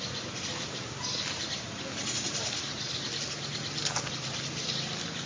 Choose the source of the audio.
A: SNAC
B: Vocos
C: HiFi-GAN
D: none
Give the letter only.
D